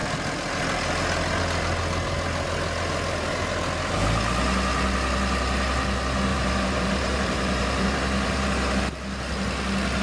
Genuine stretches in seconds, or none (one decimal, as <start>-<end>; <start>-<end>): 0.0-6.3; 8.8-10.0

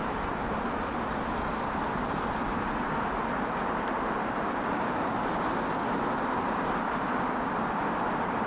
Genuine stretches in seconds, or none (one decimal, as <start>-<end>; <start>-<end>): 1.0-2.4; 4.9-8.5

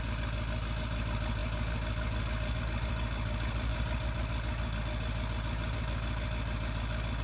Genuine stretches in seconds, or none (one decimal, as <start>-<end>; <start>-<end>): 0.0-7.2

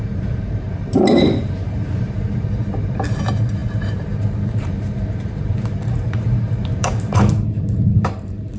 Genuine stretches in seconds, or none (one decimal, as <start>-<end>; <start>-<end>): none

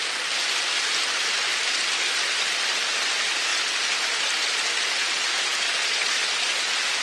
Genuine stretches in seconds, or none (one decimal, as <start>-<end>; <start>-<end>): 0.6-7.0